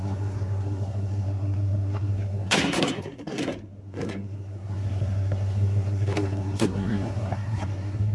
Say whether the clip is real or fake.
fake